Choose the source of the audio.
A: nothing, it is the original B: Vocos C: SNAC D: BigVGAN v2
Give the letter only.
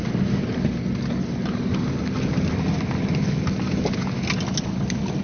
A